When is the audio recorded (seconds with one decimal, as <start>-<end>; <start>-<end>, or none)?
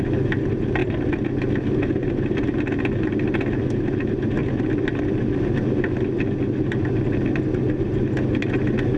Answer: 0.0-9.0